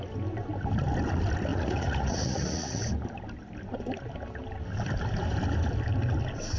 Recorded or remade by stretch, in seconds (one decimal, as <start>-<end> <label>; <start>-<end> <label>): 0.0-1.5 recorded; 1.5-2.8 remade; 2.8-6.6 recorded